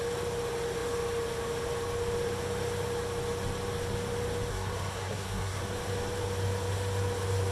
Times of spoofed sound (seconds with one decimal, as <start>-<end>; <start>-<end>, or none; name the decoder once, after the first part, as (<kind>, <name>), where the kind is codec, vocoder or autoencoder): 4.5-5.6 (codec, SNAC)